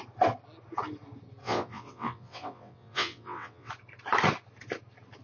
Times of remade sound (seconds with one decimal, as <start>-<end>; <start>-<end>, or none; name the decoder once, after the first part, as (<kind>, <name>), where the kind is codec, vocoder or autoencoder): 1.4-3.7 (vocoder, WaveNeXt)